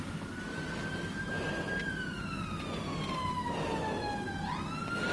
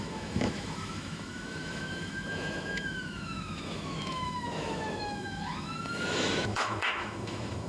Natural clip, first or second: first